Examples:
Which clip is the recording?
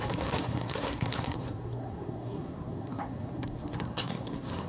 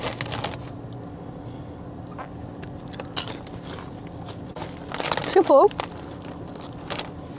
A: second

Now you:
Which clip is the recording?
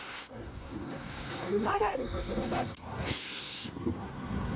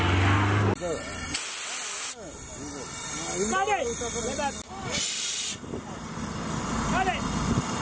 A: second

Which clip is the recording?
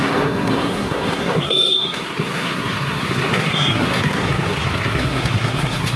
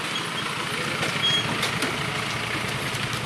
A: second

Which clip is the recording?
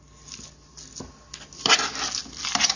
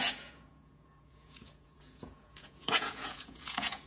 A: first